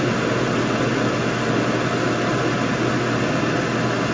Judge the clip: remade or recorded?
recorded